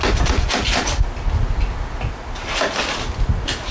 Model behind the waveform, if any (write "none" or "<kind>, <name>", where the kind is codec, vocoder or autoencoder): none